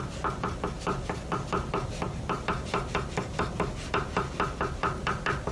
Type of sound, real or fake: real